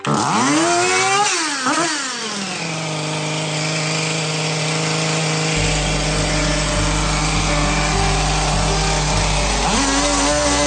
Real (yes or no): yes